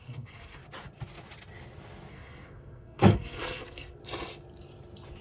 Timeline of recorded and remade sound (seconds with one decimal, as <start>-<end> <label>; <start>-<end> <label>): 0.0-0.6 remade; 0.6-2.1 recorded; 2.1-4.0 remade; 4.0-5.2 recorded